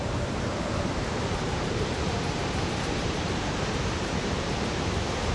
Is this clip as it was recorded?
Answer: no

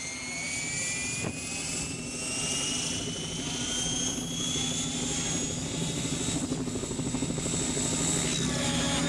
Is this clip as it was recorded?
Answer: yes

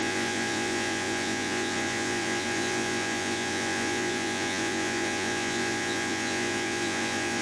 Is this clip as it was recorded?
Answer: no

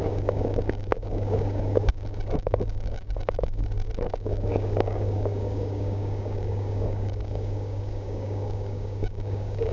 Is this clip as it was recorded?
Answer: no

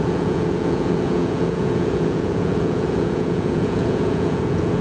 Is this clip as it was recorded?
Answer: no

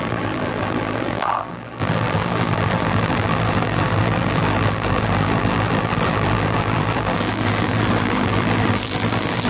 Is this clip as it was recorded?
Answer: no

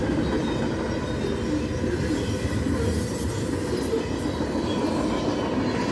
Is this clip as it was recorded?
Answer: yes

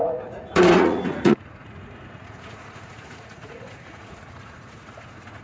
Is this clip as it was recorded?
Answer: no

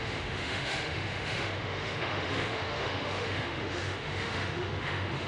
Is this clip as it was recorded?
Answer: no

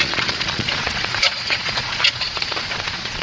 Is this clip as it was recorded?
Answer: no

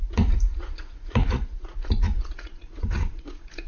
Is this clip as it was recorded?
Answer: no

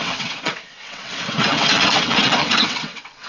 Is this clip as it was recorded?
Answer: no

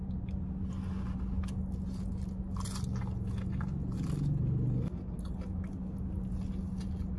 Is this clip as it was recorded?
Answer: yes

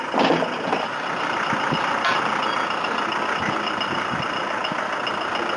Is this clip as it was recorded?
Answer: yes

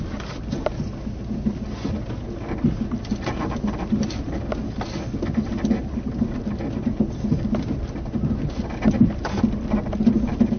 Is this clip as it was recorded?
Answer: yes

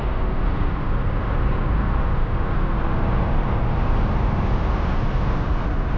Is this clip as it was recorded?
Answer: yes